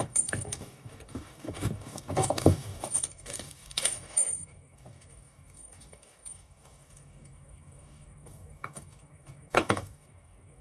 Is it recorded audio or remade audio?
remade